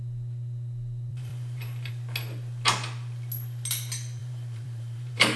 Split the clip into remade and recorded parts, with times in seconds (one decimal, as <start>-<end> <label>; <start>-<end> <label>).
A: 0.0-1.1 recorded; 1.1-1.9 remade; 1.9-4.2 recorded; 4.2-5.4 remade